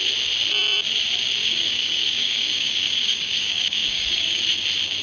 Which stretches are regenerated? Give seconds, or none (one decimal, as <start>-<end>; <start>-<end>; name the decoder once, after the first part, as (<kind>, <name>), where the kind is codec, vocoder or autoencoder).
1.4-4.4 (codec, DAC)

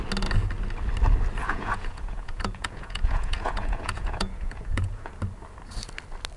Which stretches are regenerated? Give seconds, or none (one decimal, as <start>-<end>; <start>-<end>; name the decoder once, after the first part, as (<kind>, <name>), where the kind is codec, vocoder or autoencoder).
1.4-5.2 (vocoder, Vocos)

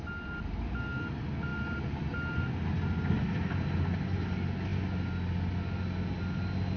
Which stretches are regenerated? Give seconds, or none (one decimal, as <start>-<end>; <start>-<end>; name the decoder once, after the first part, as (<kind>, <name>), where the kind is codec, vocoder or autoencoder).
none